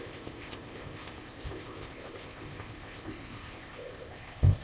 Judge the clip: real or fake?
fake